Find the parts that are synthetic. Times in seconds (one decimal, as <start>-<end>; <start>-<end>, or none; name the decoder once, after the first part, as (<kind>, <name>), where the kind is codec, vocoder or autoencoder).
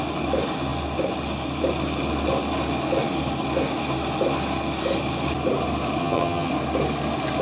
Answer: 6.0-6.5 (vocoder, HiFi-GAN)